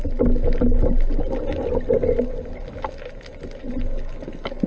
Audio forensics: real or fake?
real